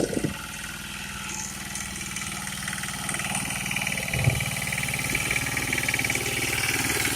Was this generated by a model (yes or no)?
no